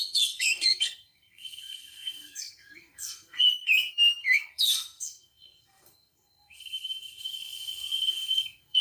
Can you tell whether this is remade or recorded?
remade